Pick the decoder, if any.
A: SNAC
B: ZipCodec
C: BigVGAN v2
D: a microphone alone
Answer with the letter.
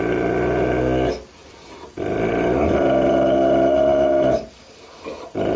D